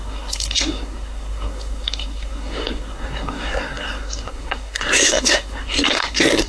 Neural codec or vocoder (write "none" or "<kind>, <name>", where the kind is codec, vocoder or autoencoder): codec, SNAC